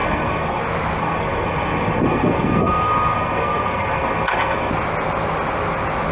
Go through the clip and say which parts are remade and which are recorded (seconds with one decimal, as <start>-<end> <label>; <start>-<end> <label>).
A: 0.0-0.6 remade; 0.6-1.0 recorded; 1.0-4.7 remade; 4.7-6.1 recorded